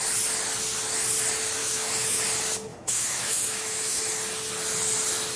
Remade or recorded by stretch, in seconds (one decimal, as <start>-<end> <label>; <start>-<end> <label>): 0.0-1.6 recorded; 1.6-2.2 remade; 2.2-2.7 recorded; 2.7-4.0 remade; 4.0-5.4 recorded